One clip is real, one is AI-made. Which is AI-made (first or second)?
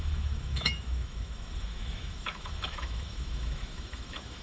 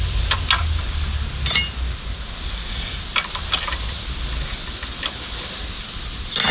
first